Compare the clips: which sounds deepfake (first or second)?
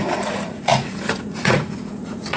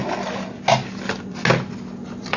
first